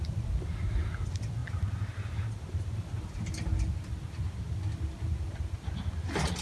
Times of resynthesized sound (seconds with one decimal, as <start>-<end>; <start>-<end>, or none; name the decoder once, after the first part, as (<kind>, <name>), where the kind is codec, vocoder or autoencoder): none